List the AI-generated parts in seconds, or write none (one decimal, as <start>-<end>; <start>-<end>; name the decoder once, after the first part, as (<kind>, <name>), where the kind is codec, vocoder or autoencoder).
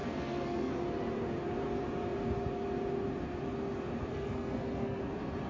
0.0-0.7 (codec, SNAC); 4.1-5.0